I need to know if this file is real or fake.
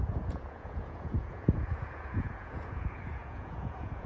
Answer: fake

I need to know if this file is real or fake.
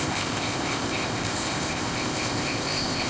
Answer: fake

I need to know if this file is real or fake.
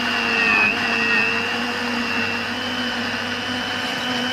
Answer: real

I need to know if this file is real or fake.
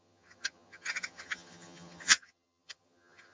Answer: fake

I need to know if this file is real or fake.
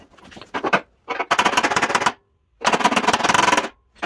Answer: real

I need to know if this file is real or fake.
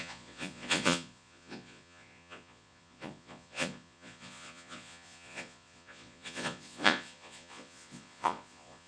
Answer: fake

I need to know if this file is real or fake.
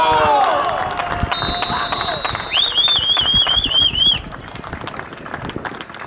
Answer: real